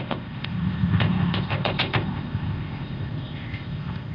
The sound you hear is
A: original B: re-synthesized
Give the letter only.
B